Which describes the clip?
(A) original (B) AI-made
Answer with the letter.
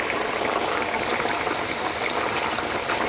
A